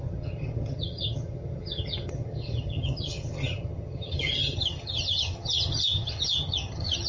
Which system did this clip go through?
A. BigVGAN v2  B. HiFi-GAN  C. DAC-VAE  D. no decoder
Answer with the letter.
B